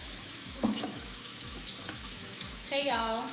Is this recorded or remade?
remade